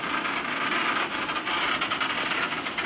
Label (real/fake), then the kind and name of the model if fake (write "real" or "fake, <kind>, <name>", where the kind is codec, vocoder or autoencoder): real